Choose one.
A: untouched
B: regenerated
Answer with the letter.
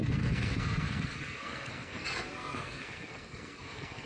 B